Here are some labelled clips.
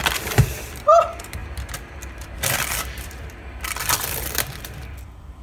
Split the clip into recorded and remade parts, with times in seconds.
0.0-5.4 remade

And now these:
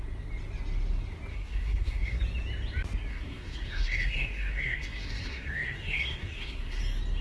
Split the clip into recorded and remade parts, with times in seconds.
0.0-1.3 recorded; 1.3-2.2 remade; 2.2-3.1 recorded; 3.1-6.8 remade; 6.8-7.2 recorded

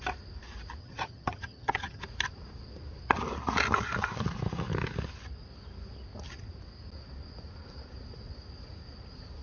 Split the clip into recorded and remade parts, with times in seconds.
0.0-0.8 recorded; 0.8-2.0 remade; 2.0-9.4 recorded